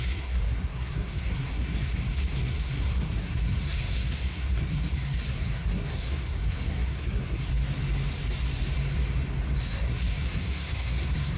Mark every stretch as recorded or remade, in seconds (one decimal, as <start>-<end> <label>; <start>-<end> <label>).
0.0-7.5 remade; 7.5-9.6 recorded; 9.6-11.4 remade